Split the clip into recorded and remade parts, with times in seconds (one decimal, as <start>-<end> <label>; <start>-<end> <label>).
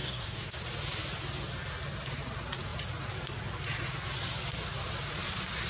0.0-0.6 remade; 0.6-5.7 recorded